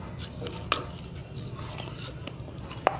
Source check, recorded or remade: recorded